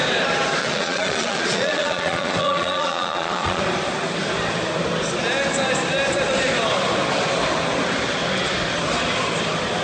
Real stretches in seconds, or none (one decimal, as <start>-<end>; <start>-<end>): 0.0-0.6; 3.6-9.8